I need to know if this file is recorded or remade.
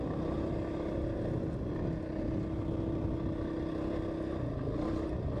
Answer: recorded